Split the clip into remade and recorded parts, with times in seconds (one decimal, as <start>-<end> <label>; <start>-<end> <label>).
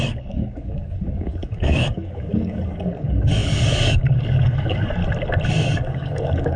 0.0-5.0 remade; 5.0-5.5 recorded; 5.5-6.6 remade